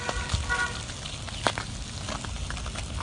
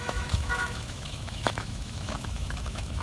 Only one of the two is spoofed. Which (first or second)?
second